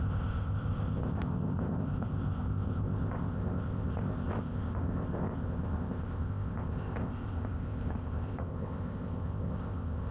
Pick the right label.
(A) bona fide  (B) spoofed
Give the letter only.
B